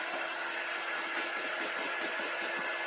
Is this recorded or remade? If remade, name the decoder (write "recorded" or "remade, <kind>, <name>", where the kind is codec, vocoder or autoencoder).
remade, vocoder, BigVGAN v2